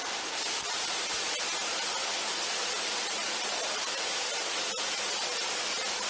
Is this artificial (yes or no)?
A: no